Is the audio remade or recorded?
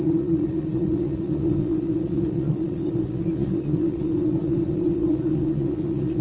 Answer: remade